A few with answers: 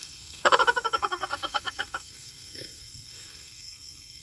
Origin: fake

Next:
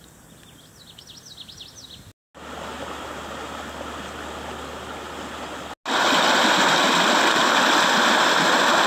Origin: real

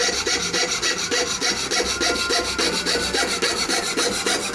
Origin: real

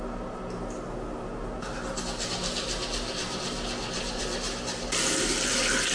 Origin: real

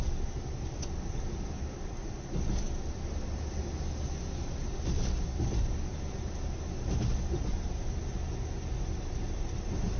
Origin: real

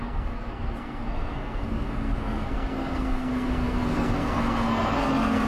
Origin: fake